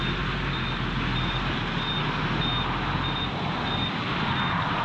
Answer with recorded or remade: recorded